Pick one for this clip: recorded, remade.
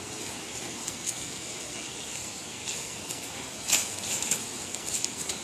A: remade